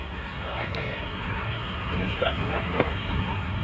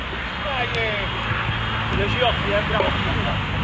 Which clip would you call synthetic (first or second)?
first